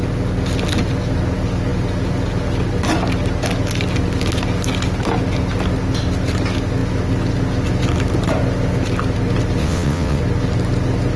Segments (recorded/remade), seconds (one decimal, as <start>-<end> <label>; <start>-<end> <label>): 0.0-9.6 recorded; 9.6-10.2 remade; 10.2-11.2 recorded